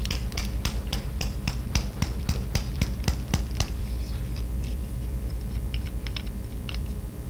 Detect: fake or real fake